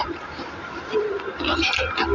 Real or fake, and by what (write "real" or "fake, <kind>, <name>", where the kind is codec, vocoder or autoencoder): real